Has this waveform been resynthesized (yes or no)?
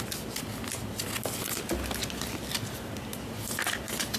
no